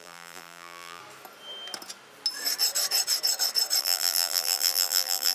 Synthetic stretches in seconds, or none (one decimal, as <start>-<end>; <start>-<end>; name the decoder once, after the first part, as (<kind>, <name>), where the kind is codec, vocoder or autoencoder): 0.0-1.0 (vocoder, BigVGAN v2); 3.8-5.3